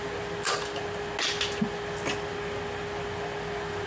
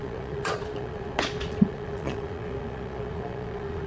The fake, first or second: second